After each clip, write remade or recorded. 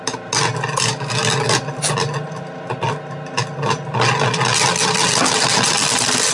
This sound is recorded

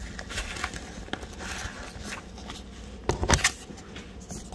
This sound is recorded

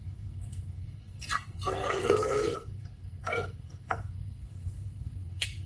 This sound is remade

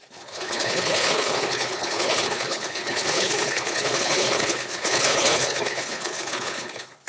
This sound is remade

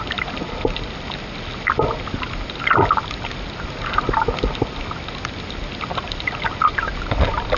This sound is recorded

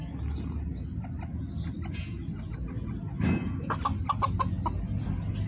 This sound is recorded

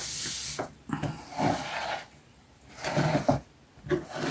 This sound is recorded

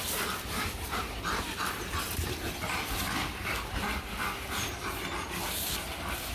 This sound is recorded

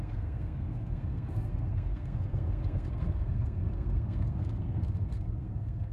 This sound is remade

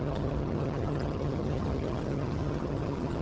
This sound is remade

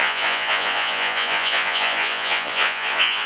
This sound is remade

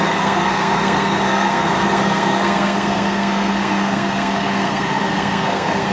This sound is remade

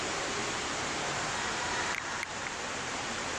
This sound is remade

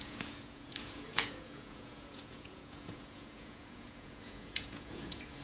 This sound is remade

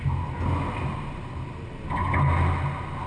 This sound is recorded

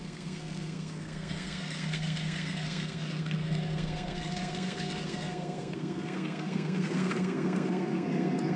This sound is remade